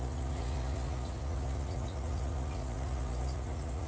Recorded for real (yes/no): no